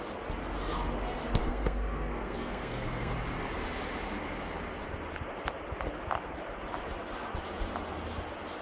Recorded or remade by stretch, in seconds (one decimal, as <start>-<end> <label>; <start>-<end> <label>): 0.0-1.4 recorded; 1.4-3.1 remade; 3.1-8.6 recorded